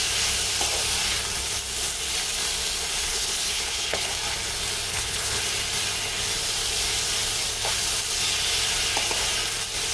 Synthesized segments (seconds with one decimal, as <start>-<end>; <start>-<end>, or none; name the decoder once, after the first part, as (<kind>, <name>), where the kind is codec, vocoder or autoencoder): 3.1-4.1 (codec, HILCodec); 4.9-5.4